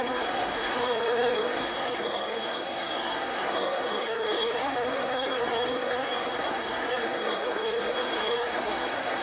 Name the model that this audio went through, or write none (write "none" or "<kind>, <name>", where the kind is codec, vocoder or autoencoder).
codec, SNAC